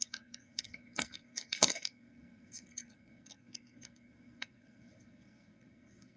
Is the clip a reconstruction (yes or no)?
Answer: yes